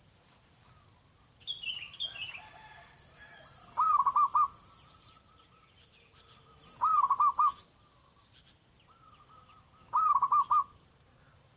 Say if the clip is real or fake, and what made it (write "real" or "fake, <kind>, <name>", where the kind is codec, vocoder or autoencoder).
real